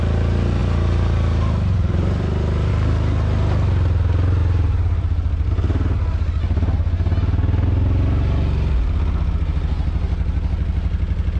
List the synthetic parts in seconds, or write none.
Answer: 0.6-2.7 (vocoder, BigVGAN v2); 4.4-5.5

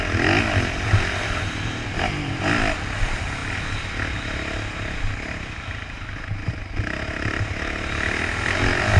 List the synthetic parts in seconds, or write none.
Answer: none

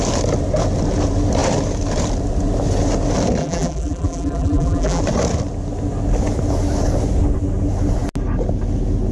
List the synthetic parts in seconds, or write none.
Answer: 3.4-5.0 (vocoder, BigVGAN v2)

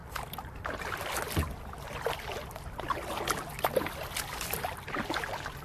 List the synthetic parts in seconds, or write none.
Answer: 0.0-0.9 (vocoder, BigVGAN v2)

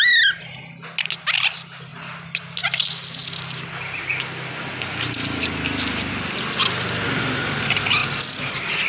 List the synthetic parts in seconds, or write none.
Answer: none

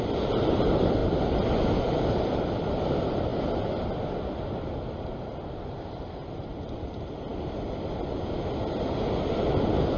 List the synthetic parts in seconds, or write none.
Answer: 0.0-3.3 (vocoder, BigVGAN v2); 6.1-10.0

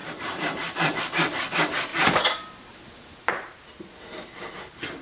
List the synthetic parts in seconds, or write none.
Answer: 0.0-1.0 (vocoder, BigVGAN v2); 1.9-5.0

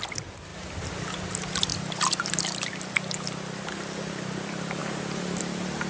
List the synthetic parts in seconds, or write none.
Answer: 4.8-5.4 (vocoder, BigVGAN v2)